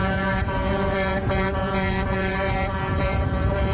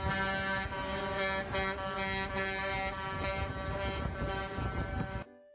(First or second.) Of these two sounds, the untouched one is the second